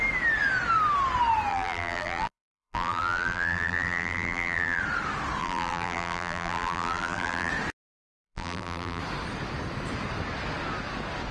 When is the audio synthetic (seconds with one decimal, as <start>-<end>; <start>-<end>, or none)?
1.5-4.8; 5.4-7.5; 8.2-9.0